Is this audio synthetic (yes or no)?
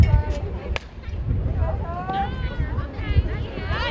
no